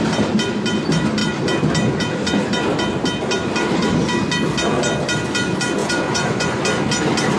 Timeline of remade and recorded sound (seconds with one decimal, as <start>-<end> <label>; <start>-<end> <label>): 0.0-5.8 recorded; 5.8-6.6 remade; 6.6-7.4 recorded